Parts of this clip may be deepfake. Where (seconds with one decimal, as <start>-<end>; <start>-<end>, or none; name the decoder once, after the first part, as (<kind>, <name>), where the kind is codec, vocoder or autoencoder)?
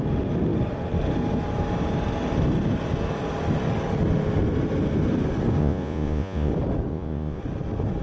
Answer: 5.6-6.5 (vocoder, Vocos); 6.9-7.4